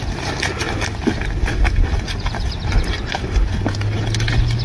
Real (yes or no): yes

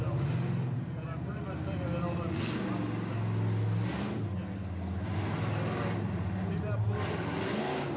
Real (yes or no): yes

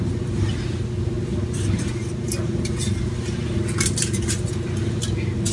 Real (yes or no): yes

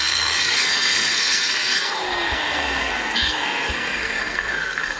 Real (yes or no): no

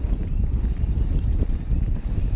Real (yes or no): yes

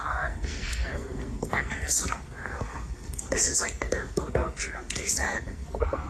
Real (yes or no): no